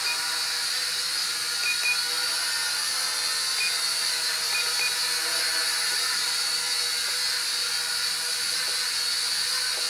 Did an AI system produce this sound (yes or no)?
no